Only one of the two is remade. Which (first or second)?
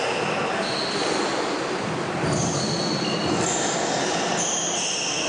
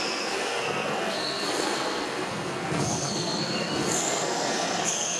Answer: second